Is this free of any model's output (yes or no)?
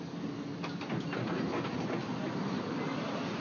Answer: yes